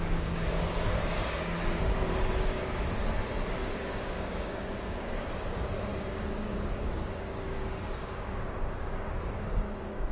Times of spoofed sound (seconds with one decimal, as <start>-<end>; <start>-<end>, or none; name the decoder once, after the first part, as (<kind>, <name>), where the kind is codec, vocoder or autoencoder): 0.0-3.0 (codec, DAC); 3.5-10.1